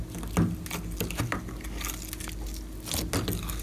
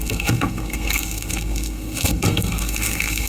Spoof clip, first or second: second